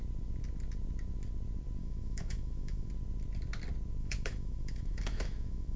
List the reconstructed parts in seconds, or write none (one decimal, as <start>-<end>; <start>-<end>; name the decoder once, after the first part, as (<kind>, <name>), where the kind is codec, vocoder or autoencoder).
1.8-2.9 (autoencoder, DAC-VAE); 4.0-5.8